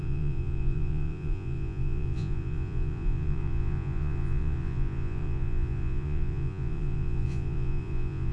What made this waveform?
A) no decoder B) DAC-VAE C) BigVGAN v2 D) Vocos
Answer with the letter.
D